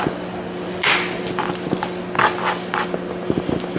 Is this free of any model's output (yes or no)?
yes